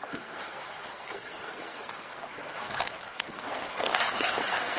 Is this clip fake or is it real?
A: fake